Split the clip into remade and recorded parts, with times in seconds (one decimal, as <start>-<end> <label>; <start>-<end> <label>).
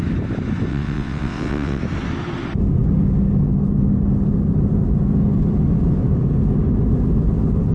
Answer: 0.0-0.7 recorded; 0.7-1.8 remade; 1.8-7.7 recorded